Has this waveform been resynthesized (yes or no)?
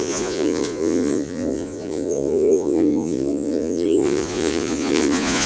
yes